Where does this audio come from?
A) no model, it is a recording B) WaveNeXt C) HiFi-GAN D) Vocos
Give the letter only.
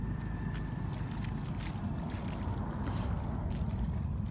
A